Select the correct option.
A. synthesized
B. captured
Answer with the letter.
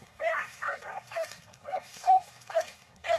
A